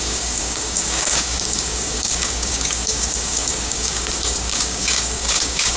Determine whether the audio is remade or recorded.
remade